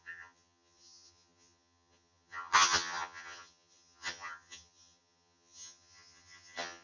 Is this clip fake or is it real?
fake